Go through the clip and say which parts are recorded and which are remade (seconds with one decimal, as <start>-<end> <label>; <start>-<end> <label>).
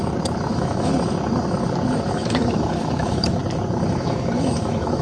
0.0-0.5 recorded; 0.5-0.9 remade; 0.9-2.1 recorded; 2.1-3.4 remade; 3.4-4.0 recorded; 4.0-5.0 remade